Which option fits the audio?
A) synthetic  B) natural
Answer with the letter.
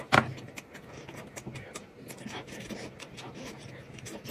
B